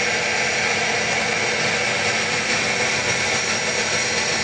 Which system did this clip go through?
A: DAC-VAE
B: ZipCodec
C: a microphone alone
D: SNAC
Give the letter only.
C